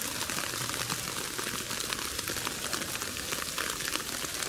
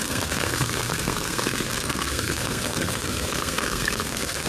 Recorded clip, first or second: first